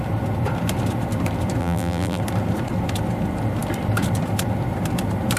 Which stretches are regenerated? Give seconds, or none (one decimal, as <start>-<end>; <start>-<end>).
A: 1.6-2.2